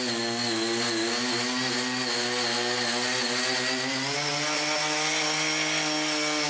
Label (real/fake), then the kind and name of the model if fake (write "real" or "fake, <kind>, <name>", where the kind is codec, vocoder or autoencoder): real